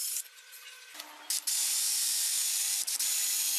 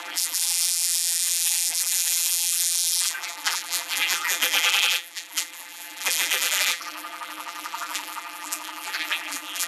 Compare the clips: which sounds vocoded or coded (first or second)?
second